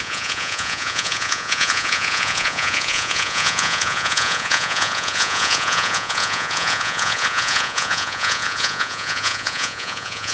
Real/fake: fake